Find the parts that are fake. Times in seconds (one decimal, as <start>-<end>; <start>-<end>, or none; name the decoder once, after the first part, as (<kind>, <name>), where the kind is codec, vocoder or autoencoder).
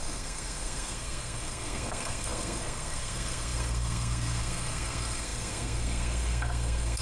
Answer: 0.0-7.0 (codec, SNAC)